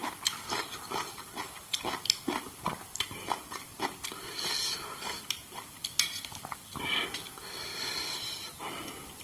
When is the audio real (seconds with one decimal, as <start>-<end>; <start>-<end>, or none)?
1.4-2.7; 4.2-7.7; 8.6-9.2

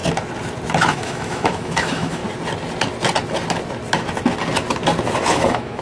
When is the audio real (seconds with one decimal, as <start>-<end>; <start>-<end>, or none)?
0.0-0.9; 2.2-5.3

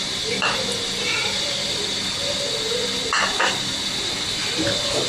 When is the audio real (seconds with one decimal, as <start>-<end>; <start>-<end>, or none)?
0.0-1.2; 2.3-5.1

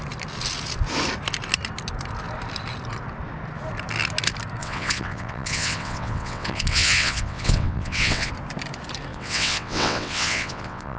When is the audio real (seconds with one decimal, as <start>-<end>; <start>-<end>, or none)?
0.0-4.6; 8.3-9.1

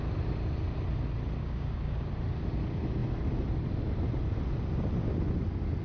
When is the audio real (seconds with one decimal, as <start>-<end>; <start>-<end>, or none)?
0.0-1.4; 2.1-5.8

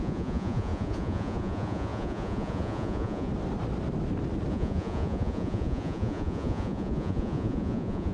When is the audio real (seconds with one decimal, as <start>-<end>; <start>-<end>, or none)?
3.3-4.5

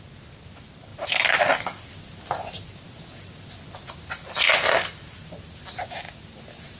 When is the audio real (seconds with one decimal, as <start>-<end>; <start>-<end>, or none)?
0.0-6.8